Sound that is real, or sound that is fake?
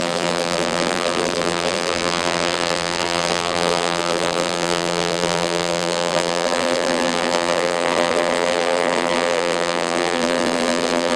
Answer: fake